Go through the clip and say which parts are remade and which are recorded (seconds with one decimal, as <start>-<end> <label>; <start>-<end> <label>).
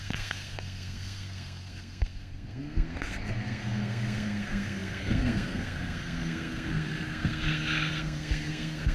0.0-8.9 remade